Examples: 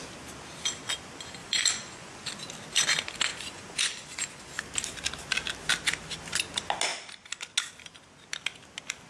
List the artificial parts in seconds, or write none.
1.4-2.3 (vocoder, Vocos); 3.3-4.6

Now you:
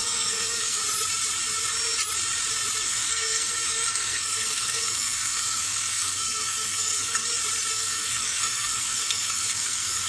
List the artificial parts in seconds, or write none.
0.0-0.8 (codec, SNAC); 2.8-7.2; 7.7-10.1

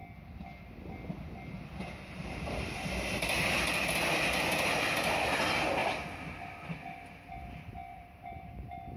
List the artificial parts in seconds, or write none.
7.9-9.0 (vocoder, BigVGAN v2)

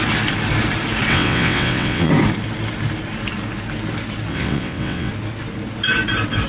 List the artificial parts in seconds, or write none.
1.1-2.1 (vocoder, WaveNeXt); 4.3-5.1

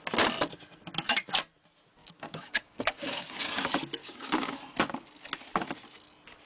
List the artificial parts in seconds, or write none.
2.0-3.4 (codec, DAC); 4.0-4.6

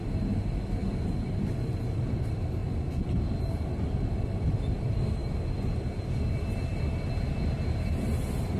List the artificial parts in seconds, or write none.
0.8-1.3 (vocoder, BigVGAN v2)

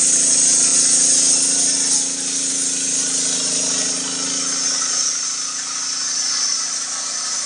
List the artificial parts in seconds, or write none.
none